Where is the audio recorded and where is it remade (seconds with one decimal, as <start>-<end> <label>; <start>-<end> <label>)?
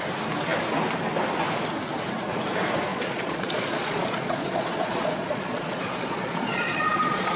0.0-2.9 recorded; 2.9-7.4 remade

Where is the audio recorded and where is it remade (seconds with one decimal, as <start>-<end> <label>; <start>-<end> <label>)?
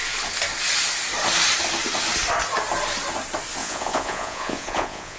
0.0-3.6 recorded; 3.6-5.2 remade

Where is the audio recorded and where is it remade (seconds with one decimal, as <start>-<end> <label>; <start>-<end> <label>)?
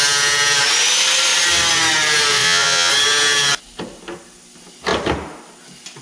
0.0-2.3 recorded; 2.3-2.9 remade; 2.9-6.0 recorded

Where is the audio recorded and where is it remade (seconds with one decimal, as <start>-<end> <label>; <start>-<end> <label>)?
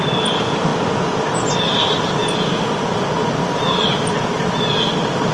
0.0-5.3 recorded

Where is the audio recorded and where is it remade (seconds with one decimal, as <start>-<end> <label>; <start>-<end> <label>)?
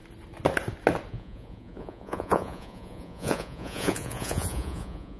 0.0-1.1 recorded; 1.1-5.2 remade